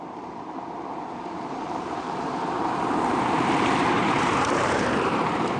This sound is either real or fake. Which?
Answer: fake